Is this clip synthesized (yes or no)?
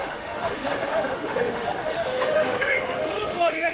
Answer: yes